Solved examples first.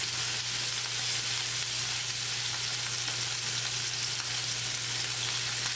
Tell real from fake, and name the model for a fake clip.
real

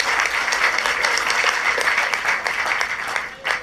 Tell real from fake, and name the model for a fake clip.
real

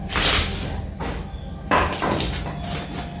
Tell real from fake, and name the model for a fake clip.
real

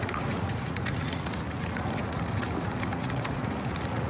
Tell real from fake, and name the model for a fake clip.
fake, vocoder, Vocos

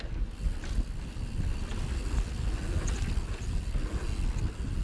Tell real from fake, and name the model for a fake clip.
real